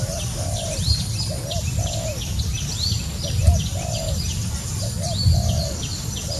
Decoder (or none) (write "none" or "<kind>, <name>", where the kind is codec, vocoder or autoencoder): vocoder, BigVGAN v2